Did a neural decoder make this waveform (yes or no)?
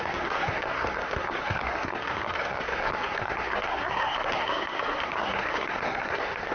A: yes